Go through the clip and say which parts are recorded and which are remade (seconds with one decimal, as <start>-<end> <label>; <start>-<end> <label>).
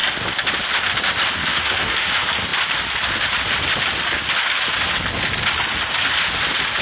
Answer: 0.0-1.5 recorded; 1.5-2.1 remade; 2.1-6.8 recorded